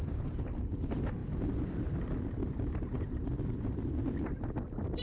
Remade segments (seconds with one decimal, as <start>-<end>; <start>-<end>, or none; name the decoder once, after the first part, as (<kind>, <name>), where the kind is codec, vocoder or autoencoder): none